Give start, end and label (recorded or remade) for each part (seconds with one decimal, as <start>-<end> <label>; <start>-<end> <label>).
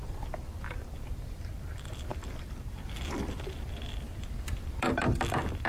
0.0-5.7 remade